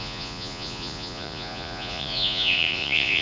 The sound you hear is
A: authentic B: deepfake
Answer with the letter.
B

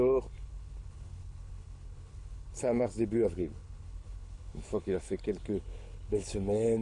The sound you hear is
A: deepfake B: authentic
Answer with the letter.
A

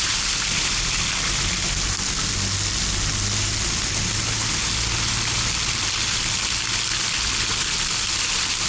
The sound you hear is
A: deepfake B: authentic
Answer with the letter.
B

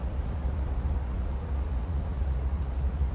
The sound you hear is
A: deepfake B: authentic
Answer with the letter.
A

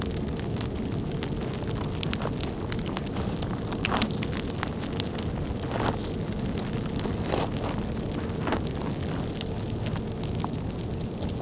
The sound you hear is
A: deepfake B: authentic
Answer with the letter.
B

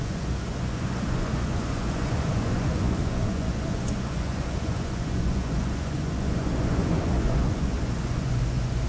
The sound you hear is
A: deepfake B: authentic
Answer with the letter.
A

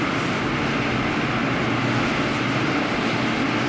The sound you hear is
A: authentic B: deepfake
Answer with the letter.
A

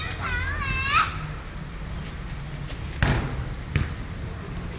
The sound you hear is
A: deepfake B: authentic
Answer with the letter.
B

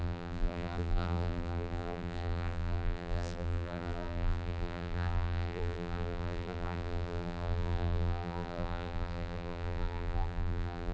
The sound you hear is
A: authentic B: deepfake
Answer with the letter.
B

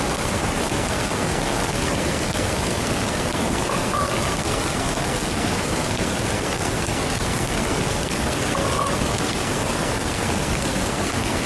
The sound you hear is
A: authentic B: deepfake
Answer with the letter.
B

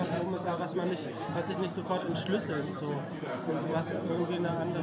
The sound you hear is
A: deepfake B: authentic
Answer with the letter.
B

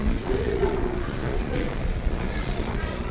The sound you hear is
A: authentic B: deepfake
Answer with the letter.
B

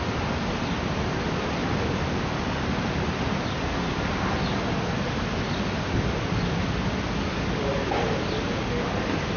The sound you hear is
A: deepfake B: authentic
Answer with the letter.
B